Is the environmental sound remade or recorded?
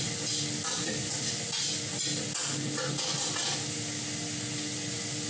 recorded